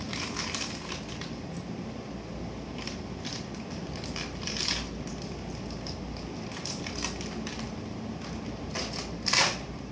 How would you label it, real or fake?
real